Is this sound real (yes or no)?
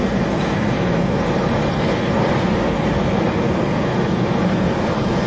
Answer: yes